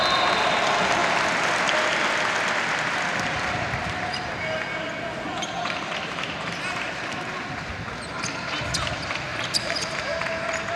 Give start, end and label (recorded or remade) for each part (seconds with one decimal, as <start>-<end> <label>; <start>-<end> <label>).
0.0-3.8 recorded; 3.8-7.9 remade; 7.9-9.3 recorded; 9.3-10.2 remade; 10.2-10.8 recorded